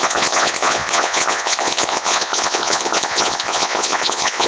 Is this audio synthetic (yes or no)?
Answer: yes